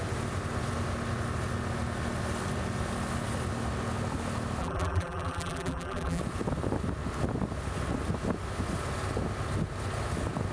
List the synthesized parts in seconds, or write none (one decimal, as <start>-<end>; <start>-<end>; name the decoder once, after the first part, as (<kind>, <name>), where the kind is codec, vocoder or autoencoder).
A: 4.6-6.2 (vocoder, BigVGAN v2)